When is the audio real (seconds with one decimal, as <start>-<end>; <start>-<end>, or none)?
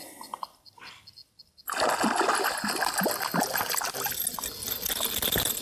0.0-5.6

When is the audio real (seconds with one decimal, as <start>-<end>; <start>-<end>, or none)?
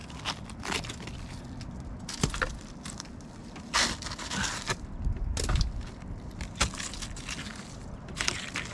0.0-8.7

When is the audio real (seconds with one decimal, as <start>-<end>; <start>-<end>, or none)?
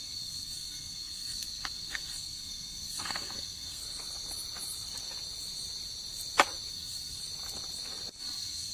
3.8-6.7; 7.2-8.2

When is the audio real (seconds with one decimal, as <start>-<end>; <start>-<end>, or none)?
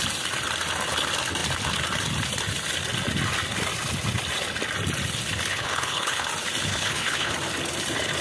0.0-5.5; 6.3-6.7; 7.3-8.2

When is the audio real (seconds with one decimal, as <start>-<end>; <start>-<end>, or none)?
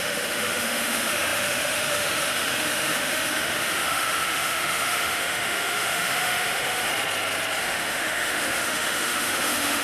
6.9-7.6